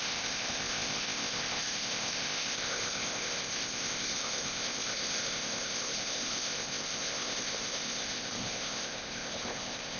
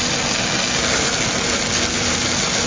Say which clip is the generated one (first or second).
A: first